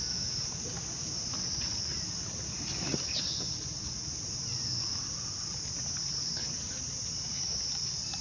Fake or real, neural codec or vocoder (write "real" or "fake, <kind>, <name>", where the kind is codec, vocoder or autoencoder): real